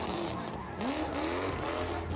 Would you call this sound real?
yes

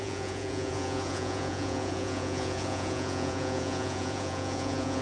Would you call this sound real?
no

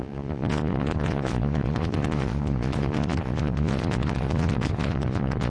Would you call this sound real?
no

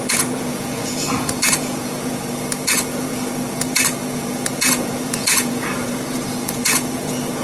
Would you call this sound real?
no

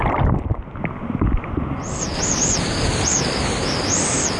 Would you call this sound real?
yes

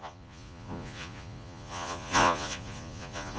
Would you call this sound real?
no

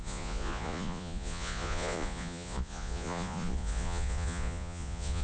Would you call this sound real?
no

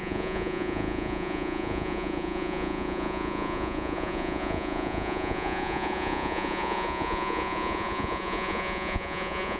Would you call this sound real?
no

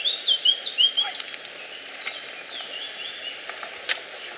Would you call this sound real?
yes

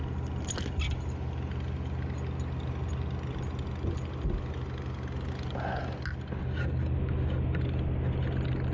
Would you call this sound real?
yes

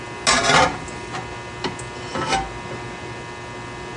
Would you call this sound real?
yes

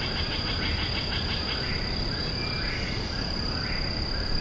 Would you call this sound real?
yes